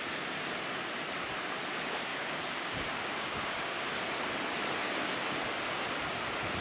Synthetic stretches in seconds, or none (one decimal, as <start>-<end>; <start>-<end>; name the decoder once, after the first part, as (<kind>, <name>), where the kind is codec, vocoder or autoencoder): 2.1-3.8 (codec, DAC)